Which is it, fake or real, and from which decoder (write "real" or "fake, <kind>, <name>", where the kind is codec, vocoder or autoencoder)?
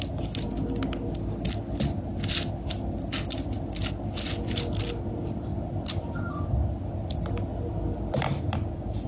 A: real